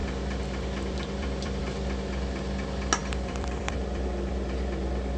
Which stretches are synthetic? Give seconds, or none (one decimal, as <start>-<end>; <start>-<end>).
0.0-1.6; 3.0-4.3